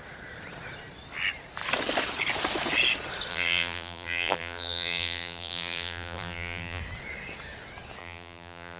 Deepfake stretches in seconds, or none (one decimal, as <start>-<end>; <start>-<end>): 3.3-6.8; 8.0-8.8